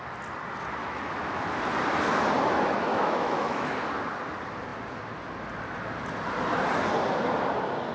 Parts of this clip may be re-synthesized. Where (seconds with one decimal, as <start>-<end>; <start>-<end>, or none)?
0.8-1.6; 2.9-3.7